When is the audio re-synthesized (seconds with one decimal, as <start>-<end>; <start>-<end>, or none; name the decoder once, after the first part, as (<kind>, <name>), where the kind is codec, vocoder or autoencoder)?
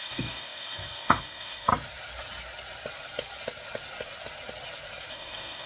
0.0-1.7 (codec, DAC); 5.1-5.7